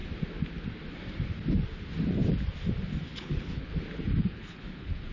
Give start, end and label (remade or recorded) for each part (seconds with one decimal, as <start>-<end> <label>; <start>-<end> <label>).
0.0-3.1 recorded; 3.1-3.7 remade; 3.7-4.2 recorded; 4.2-5.1 remade